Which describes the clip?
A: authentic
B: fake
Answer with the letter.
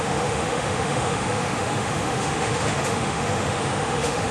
B